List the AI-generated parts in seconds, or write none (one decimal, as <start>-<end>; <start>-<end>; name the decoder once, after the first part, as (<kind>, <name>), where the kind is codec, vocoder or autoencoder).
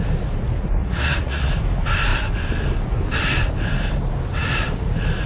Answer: 0.8-1.5 (vocoder, Vocos)